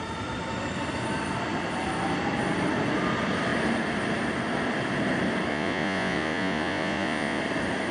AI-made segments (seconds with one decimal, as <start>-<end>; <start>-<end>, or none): 5.5-7.4